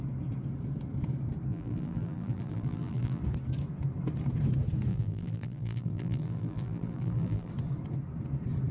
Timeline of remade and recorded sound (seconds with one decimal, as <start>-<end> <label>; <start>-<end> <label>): 0.0-1.5 recorded; 1.5-3.2 remade; 3.2-4.9 recorded; 4.9-7.5 remade; 7.5-8.7 recorded